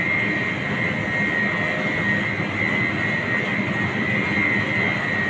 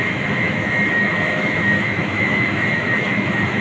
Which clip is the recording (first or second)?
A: first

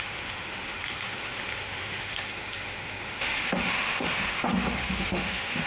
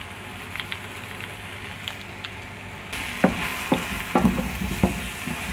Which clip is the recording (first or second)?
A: second